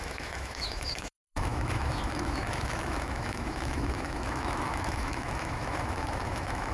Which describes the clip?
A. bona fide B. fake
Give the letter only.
B